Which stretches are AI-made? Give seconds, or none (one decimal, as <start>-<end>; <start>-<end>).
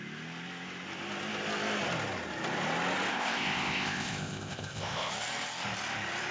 3.1-5.1